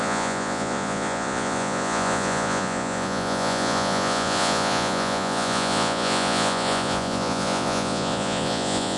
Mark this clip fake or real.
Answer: fake